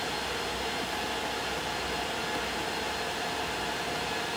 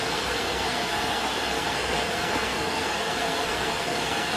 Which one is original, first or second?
first